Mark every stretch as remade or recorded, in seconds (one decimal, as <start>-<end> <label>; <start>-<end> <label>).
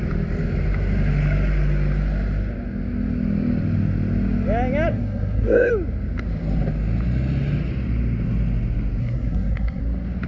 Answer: 0.0-4.9 recorded; 4.9-5.7 remade; 5.7-9.0 recorded; 9.0-9.8 remade; 9.8-10.3 recorded